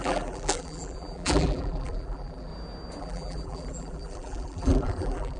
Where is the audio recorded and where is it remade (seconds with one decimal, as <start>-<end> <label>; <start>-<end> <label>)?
0.0-2.5 remade; 2.5-3.0 recorded; 3.0-5.4 remade

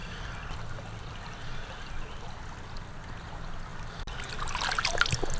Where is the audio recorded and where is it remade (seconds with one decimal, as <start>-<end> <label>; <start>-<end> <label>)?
0.0-3.2 recorded; 3.2-3.7 remade; 3.7-5.0 recorded; 5.0-5.4 remade

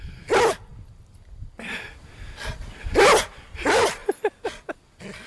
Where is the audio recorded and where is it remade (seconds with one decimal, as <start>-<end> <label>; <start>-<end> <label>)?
0.0-0.7 remade; 0.7-3.6 recorded; 3.6-4.0 remade; 4.0-4.7 recorded; 4.7-5.3 remade

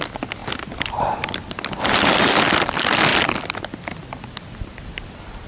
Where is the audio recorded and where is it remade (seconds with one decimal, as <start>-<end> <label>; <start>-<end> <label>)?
0.0-5.5 recorded